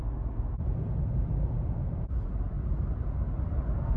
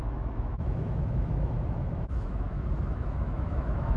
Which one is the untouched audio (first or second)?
first